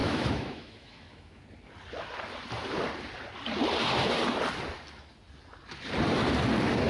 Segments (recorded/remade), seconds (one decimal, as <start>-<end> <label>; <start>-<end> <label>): 0.0-1.4 remade; 1.4-6.9 recorded